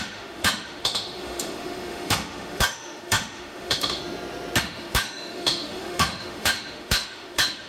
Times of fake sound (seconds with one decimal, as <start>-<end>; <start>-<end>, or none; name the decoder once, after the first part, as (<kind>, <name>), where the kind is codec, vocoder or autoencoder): 0.0-4.0 (autoencoder, DAC-VAE); 4.6-7.7